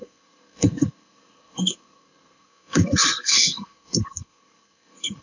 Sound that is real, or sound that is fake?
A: fake